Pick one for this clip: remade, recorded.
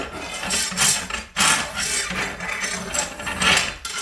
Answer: recorded